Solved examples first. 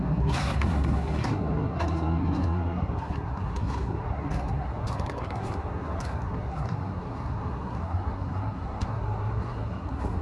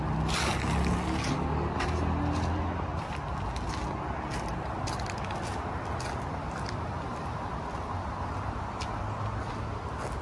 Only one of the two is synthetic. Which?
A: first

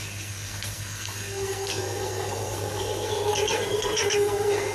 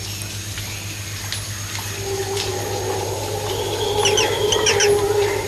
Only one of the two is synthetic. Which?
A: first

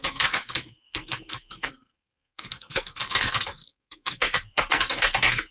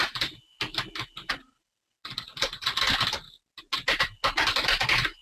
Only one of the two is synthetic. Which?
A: first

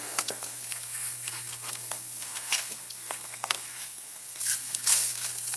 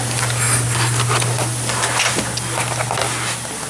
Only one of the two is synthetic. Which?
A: first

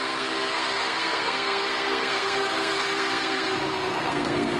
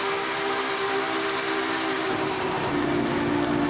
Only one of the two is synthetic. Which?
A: first